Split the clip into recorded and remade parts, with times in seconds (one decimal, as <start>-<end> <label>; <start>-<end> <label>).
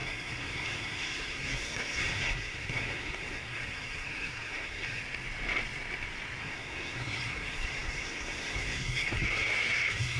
0.0-5.0 remade; 5.0-6.4 recorded; 6.4-10.2 remade